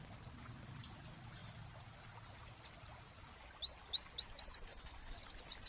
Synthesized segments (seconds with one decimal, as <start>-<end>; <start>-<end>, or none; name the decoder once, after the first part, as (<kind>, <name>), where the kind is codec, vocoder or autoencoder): 4.7-5.2 (vocoder, Vocos)